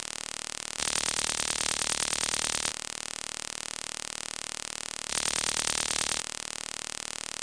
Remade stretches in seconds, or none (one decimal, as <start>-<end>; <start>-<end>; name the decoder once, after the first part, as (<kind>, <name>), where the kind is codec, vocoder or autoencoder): 0.8-2.7 (vocoder, Vocos); 5.1-6.2